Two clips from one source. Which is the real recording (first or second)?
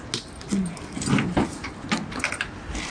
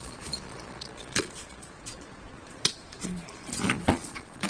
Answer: first